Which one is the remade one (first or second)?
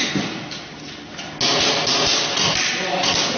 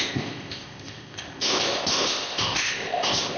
second